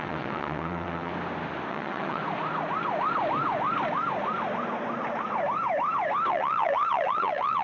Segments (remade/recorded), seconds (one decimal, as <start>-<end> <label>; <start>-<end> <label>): 0.0-1.1 remade; 1.1-1.7 recorded; 1.7-2.2 remade; 2.2-6.3 recorded; 6.3-7.6 remade